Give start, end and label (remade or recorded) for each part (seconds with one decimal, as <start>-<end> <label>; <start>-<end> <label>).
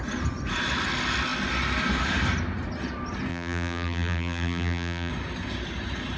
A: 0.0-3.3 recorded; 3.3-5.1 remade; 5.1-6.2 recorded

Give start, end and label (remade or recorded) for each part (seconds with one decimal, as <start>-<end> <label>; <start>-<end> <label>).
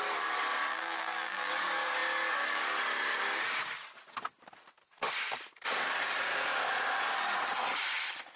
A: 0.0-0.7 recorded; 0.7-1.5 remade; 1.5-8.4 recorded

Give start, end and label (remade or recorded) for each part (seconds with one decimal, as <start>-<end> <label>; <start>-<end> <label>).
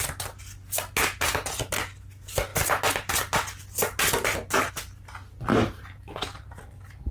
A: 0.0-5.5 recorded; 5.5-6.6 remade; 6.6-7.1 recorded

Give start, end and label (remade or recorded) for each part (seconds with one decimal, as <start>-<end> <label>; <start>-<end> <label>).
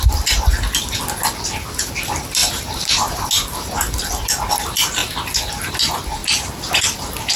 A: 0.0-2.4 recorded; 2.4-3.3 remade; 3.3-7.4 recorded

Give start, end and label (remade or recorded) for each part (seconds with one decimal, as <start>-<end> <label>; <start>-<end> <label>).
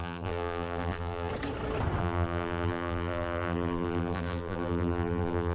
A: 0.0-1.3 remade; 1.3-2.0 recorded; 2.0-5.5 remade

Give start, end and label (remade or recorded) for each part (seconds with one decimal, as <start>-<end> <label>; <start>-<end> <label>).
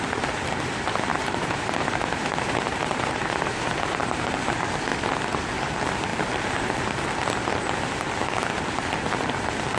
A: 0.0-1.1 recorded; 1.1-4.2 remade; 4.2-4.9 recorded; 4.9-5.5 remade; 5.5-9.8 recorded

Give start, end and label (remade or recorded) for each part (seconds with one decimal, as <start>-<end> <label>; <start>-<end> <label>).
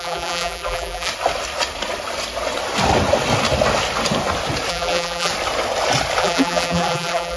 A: 0.0-1.1 remade; 1.1-4.7 recorded; 4.7-5.3 remade; 5.3-6.2 recorded; 6.2-7.4 remade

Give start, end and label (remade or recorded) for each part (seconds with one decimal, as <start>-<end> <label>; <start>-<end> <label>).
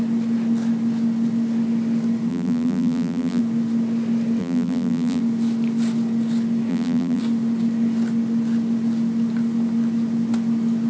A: 0.0-2.3 recorded; 2.3-3.4 remade; 3.4-4.4 recorded; 4.4-5.2 remade; 5.2-6.7 recorded; 6.7-7.2 remade; 7.2-10.9 recorded